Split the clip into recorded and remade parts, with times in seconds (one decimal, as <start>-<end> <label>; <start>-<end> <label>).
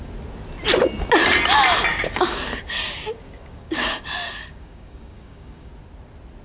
0.0-1.9 recorded; 1.9-5.7 remade; 5.7-6.4 recorded